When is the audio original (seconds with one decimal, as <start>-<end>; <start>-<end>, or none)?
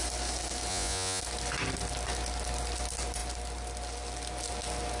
0.0-0.7; 1.2-5.0